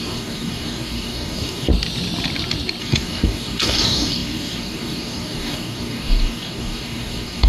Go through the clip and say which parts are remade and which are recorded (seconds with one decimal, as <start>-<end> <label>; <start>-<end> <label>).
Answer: 0.0-1.7 remade; 1.7-2.8 recorded; 2.8-7.5 remade